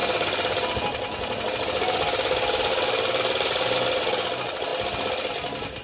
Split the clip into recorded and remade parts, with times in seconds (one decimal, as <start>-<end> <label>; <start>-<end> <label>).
0.0-5.8 recorded